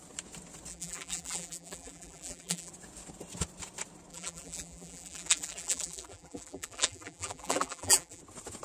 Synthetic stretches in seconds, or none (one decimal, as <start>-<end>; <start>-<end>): 0.7-2.7; 4.1-8.2